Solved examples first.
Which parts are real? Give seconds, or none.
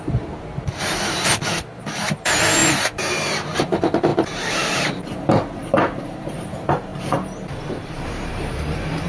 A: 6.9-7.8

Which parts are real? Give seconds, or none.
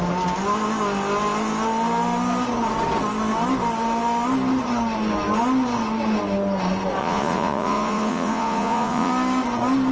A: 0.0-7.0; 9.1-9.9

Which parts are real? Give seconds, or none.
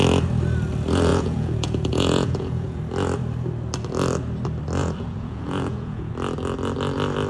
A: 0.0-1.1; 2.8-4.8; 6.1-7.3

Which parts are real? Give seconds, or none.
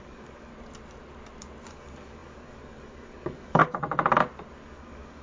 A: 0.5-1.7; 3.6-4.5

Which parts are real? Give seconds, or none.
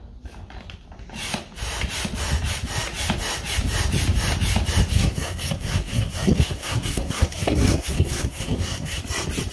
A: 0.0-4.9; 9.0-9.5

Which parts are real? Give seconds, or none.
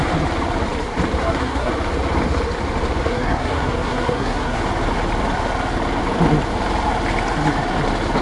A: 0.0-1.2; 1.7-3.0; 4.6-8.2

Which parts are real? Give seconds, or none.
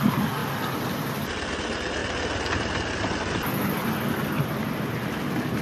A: 0.0-5.6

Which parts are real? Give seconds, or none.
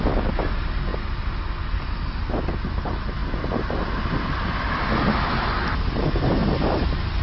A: 0.0-3.2; 4.9-6.4